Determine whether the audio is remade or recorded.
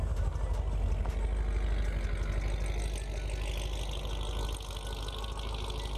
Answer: recorded